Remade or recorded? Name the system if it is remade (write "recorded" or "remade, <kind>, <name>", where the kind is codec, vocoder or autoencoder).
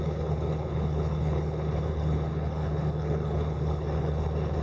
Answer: remade, codec, HILCodec